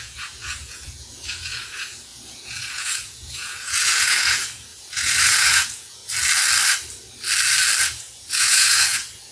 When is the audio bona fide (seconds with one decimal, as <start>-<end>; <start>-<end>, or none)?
6.0-7.8